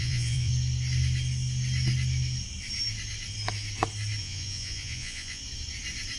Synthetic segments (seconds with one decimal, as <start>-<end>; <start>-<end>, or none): 0.0-0.5; 4.2-5.4